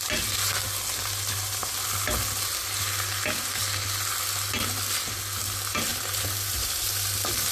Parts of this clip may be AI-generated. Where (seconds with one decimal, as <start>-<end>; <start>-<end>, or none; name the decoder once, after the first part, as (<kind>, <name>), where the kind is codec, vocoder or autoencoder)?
5.9-6.9 (vocoder, BigVGAN v2)